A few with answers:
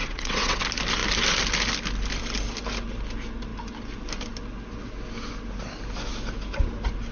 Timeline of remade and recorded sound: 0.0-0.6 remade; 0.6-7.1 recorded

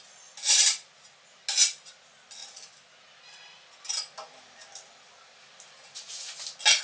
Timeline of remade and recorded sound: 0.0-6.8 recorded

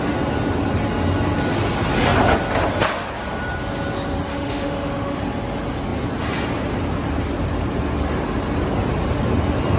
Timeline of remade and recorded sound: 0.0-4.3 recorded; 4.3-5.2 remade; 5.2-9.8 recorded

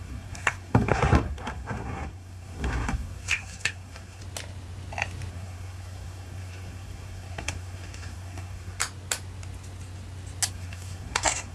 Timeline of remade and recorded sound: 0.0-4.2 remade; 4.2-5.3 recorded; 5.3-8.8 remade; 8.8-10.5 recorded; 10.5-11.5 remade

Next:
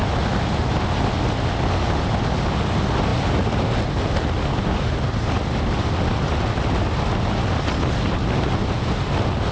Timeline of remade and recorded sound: 0.0-9.5 recorded

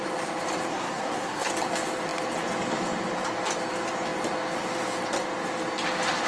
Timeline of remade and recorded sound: 0.0-0.7 recorded; 0.7-1.5 remade; 1.5-6.3 recorded

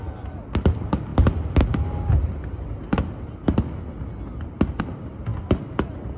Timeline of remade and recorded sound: 0.0-6.2 recorded

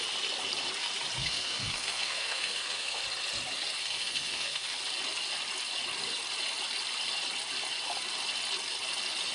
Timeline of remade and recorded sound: 0.0-1.2 recorded; 1.2-3.0 remade; 3.0-3.8 recorded; 3.8-4.8 remade; 4.8-9.3 recorded